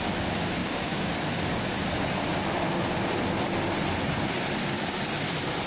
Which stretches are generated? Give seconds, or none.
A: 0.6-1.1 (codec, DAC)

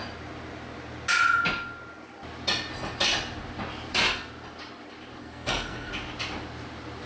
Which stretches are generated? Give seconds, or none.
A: 5.2-5.9 (codec, SNAC)

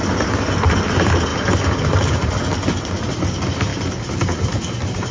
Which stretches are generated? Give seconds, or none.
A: none

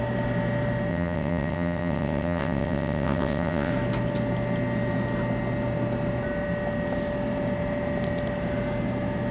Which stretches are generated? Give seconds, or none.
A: 0.9-3.7 (vocoder, WaveNeXt)

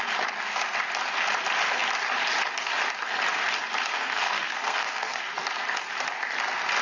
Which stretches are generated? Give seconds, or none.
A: 3.9-5.2 (codec, SNAC)

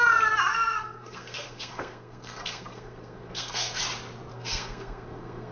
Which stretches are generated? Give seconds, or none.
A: 0.5-3.8 (codec, SNAC); 4.3-5.5

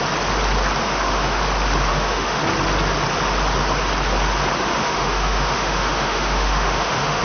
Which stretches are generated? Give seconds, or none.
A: 0.8-1.4 (autoencoder, DAC-VAE); 1.9-2.4; 4.7-7.2